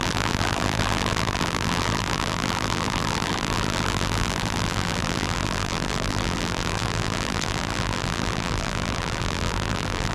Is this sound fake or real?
fake